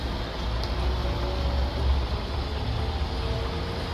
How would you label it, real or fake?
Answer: real